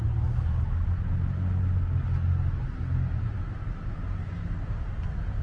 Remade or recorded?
recorded